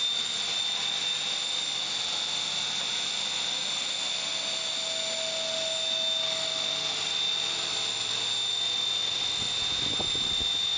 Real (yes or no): yes